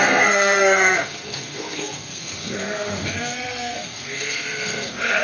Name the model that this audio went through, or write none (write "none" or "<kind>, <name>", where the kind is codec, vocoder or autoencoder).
codec, SNAC